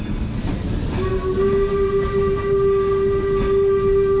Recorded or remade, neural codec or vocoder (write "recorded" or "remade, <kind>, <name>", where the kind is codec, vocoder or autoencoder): recorded